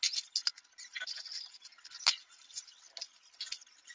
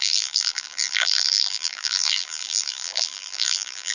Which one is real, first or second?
first